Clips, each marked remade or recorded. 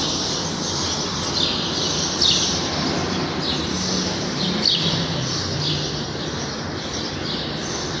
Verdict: recorded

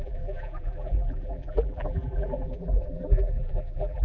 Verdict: remade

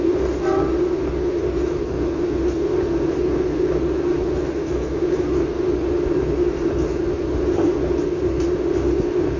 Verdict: recorded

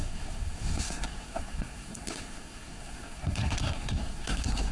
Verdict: remade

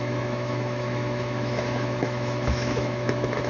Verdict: remade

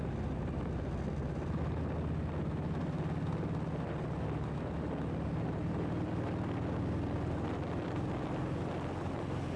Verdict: recorded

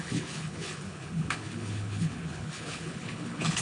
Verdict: remade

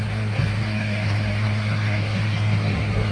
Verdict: remade